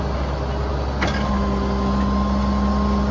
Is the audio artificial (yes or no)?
no